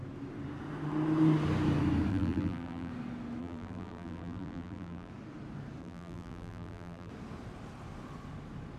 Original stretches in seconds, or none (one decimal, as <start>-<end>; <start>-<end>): 0.0-2.1; 2.9-3.4; 5.1-5.8; 7.1-8.8